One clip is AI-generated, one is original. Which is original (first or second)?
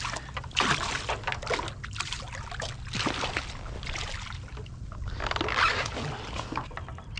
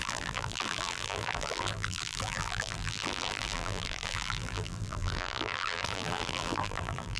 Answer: first